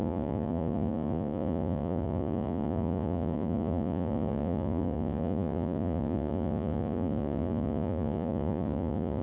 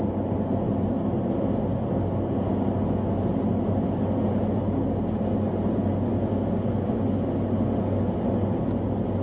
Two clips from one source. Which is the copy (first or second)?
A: first